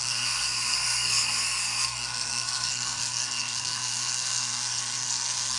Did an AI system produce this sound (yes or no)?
yes